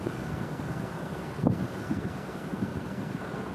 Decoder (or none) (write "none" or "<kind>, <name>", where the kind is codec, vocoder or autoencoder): codec, SNAC